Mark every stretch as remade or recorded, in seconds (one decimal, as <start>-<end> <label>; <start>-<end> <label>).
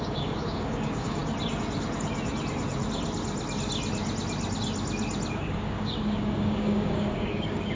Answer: 0.0-1.2 remade; 1.2-5.3 recorded; 5.3-7.8 remade